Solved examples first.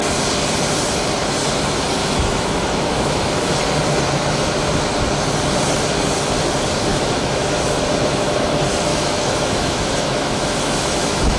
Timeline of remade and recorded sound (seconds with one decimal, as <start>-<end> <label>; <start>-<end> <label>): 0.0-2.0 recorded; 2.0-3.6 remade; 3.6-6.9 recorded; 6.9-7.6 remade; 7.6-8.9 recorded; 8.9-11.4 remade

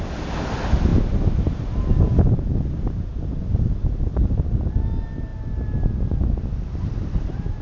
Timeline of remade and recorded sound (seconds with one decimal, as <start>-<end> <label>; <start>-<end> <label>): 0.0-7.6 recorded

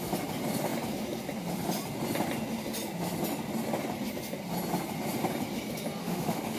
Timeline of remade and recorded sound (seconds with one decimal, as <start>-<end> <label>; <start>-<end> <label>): 0.0-6.0 recorded; 6.0-6.6 remade

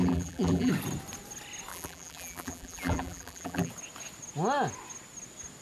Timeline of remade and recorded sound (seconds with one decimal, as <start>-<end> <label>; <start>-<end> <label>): 0.0-0.7 remade; 0.7-1.7 recorded; 1.7-3.7 remade; 3.7-5.6 recorded

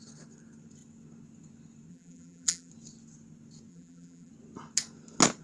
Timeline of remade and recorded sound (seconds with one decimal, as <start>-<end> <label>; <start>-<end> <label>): 0.0-1.9 recorded; 1.9-2.7 remade; 2.7-3.7 recorded; 3.7-4.3 remade; 4.3-5.4 recorded